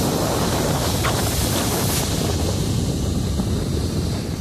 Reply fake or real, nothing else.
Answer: real